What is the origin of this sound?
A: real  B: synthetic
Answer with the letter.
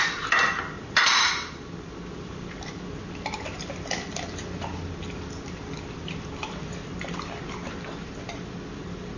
A